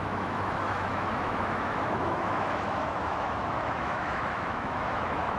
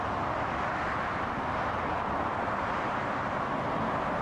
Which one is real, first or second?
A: second